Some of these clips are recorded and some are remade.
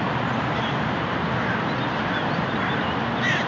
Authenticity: recorded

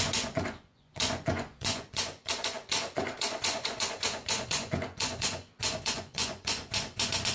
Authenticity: remade